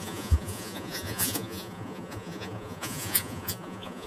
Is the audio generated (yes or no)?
yes